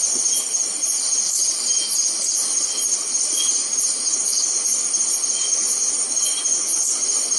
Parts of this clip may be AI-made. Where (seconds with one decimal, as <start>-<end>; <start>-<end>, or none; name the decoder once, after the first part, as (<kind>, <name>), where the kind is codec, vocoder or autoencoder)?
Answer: 4.2-6.6 (vocoder, BigVGAN v2)